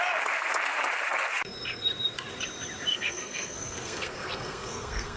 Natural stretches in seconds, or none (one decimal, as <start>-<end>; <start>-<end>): 0.0-2.9